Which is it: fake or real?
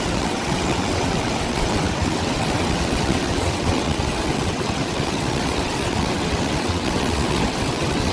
fake